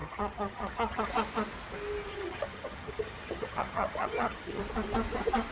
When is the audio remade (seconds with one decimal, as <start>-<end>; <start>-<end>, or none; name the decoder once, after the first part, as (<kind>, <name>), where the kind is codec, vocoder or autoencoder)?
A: 0.0-1.1 (vocoder, HiFi-GAN); 2.1-4.6

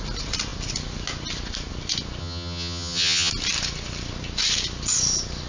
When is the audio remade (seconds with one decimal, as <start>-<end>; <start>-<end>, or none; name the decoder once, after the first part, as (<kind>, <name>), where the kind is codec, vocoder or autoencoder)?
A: 2.2-3.3 (vocoder, HiFi-GAN)

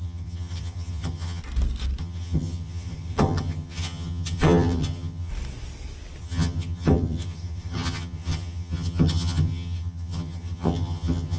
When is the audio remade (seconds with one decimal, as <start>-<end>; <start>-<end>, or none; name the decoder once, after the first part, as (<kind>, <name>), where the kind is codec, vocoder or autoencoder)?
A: 0.0-1.4 (vocoder, HiFi-GAN); 2.0-5.3; 6.2-11.4

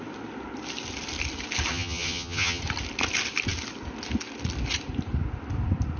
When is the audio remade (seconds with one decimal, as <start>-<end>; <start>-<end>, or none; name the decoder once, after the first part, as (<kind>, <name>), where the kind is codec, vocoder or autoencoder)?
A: 1.7-2.6 (vocoder, HiFi-GAN)

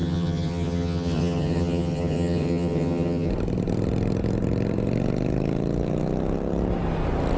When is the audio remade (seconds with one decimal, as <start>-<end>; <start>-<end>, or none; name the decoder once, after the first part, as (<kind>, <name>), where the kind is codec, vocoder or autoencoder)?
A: 0.0-3.3 (vocoder, HiFi-GAN)

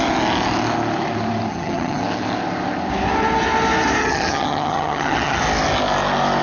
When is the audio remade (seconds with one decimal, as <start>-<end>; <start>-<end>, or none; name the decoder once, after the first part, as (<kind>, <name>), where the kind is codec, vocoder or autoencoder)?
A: 1.5-2.0 (vocoder, HiFi-GAN); 4.0-5.4

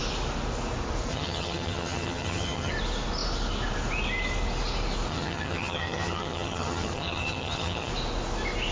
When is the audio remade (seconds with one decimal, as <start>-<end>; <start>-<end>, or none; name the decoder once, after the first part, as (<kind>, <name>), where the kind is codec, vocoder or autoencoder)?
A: 1.1-2.7 (vocoder, HiFi-GAN); 5.1-7.9